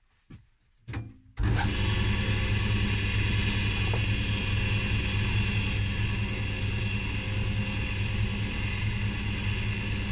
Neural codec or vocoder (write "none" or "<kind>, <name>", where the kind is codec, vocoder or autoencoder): none